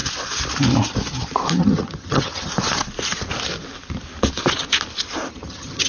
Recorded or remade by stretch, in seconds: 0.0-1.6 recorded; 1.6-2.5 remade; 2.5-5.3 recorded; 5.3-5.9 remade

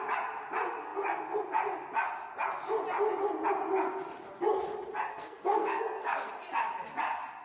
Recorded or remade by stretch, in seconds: 0.0-5.1 recorded; 5.1-6.3 remade; 6.3-7.4 recorded

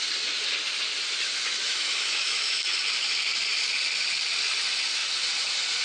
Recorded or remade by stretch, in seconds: 0.0-1.6 recorded; 1.6-2.6 remade; 2.6-5.8 recorded

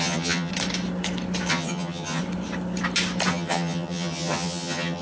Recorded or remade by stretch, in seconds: 0.0-0.5 remade; 0.5-1.5 recorded; 1.5-2.2 remade; 2.2-3.3 recorded; 3.3-5.0 remade

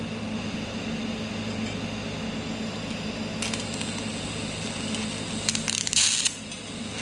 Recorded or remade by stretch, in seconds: 0.0-7.0 recorded

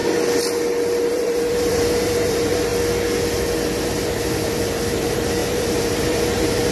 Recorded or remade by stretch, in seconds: 0.0-1.1 recorded; 1.1-2.7 remade; 2.7-4.2 recorded; 4.2-6.7 remade